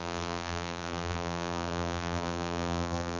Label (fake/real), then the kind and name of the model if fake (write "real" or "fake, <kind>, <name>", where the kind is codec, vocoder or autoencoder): fake, vocoder, BigVGAN v2